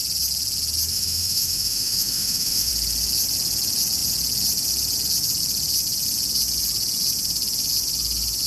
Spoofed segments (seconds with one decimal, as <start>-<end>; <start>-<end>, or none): 0.9-2.7